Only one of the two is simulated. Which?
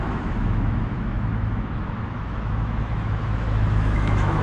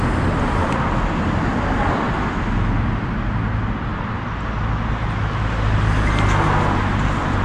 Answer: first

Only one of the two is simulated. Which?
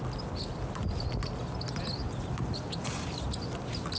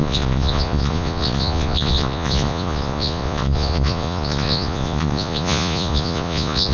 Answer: second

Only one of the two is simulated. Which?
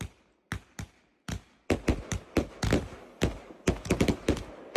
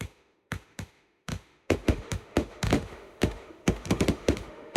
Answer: second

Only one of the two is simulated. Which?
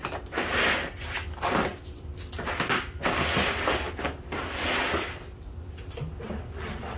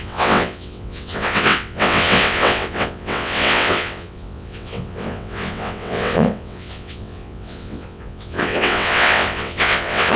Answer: second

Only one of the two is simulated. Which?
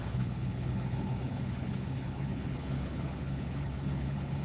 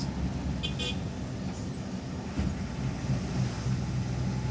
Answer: first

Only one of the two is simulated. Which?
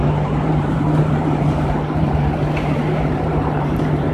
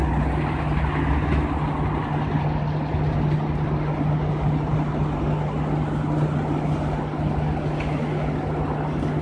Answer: first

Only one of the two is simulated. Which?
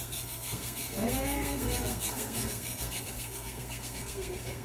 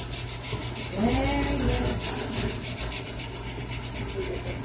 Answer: first